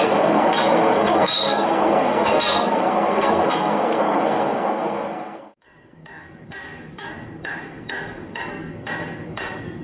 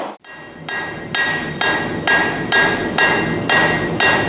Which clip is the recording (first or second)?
second